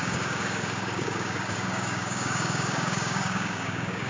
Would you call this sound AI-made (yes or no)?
yes